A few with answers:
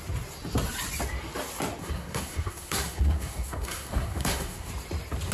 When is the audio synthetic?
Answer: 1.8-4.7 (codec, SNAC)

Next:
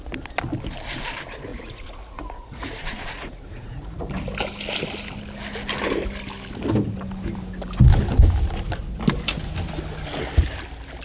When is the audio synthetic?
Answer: 1.5-4.1 (vocoder, Vocos)

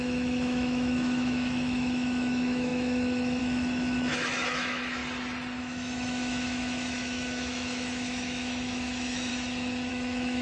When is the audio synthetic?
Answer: 0.0-5.0 (autoencoder, DAC-VAE); 5.6-9.3; 9.9-10.4

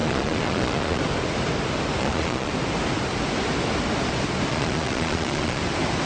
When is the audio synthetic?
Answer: 0.0-1.0 (vocoder, Vocos); 2.0-2.5; 4.5-5.6

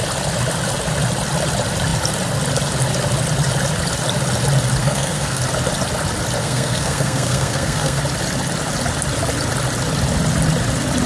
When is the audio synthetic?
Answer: 4.8-5.4 (codec, SNAC); 6.4-8.0

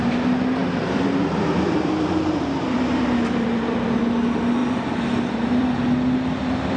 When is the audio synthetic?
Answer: 0.6-4.0 (vocoder, BigVGAN v2); 4.6-5.7

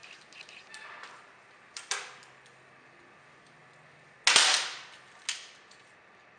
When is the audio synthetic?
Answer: none